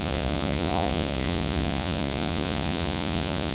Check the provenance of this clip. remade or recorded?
remade